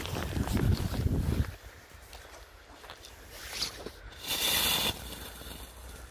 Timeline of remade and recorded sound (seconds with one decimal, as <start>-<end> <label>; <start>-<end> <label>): 0.0-6.1 recorded